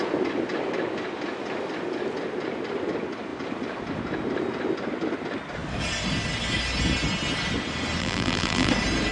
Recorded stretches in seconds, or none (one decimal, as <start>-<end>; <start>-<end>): 0.0-8.0; 8.7-9.1